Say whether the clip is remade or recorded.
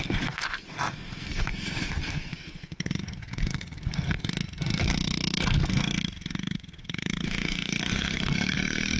remade